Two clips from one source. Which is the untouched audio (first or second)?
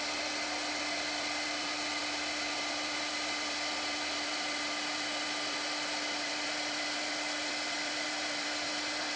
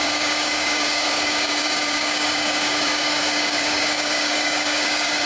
first